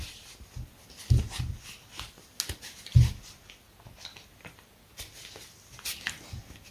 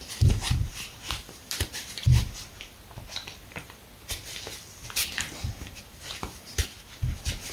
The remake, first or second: second